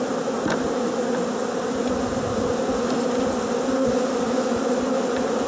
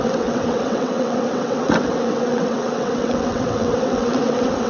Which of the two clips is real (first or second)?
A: first